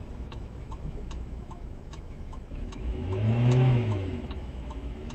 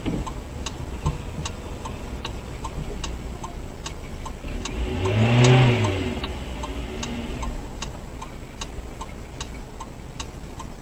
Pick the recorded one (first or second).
second